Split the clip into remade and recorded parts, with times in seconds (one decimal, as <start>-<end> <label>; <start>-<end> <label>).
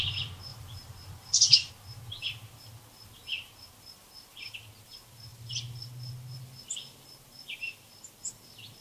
0.0-0.5 recorded; 0.5-1.7 remade; 1.7-5.3 recorded; 5.3-5.9 remade; 5.9-8.8 recorded